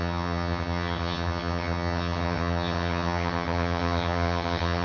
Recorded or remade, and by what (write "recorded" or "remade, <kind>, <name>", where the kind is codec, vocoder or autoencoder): remade, vocoder, HiFi-GAN